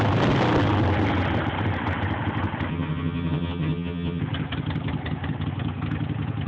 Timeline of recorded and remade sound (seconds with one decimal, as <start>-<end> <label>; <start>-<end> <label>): 0.0-2.7 recorded; 2.7-4.2 remade; 4.2-6.5 recorded